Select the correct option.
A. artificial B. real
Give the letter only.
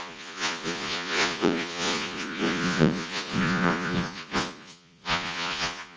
A